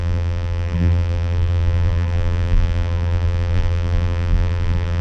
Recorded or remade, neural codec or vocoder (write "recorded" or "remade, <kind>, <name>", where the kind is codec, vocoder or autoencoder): remade, vocoder, BigVGAN v2